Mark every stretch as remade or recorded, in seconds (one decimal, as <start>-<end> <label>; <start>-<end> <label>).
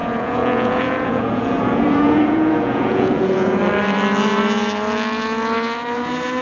0.0-3.6 remade; 3.6-6.4 recorded